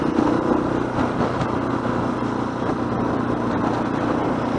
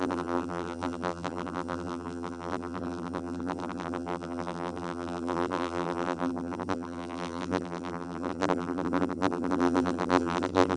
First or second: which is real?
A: first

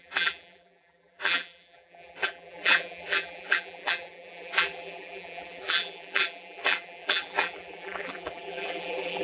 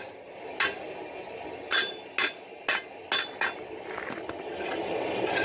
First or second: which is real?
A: second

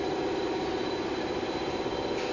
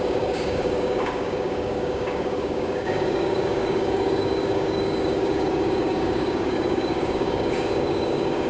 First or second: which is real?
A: first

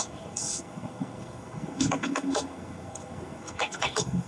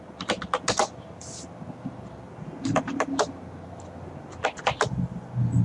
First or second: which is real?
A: second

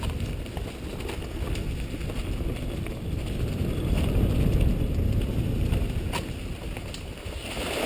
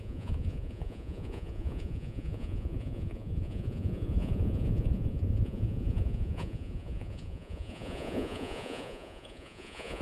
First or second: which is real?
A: first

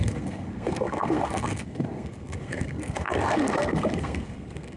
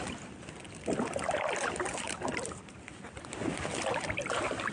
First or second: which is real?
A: second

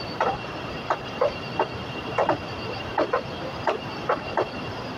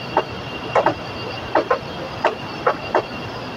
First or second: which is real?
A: second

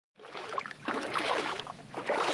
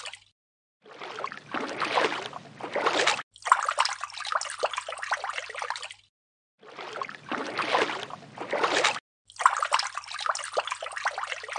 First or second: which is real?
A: second